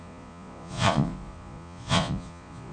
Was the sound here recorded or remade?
remade